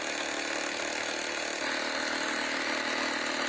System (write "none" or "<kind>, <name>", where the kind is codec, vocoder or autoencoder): none